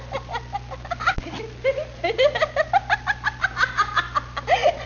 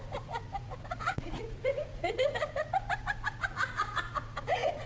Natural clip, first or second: first